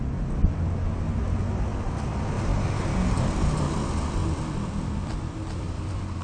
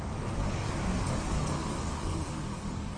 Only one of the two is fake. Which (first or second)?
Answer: second